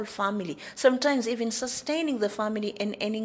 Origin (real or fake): real